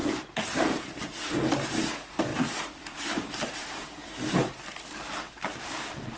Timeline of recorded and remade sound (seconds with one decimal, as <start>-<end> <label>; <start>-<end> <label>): 0.0-1.2 remade; 1.2-2.3 recorded; 2.3-6.2 remade